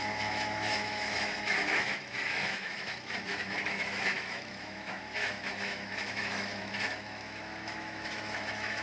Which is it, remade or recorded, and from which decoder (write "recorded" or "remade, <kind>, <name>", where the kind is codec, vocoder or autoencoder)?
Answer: remade, autoencoder, DAC-VAE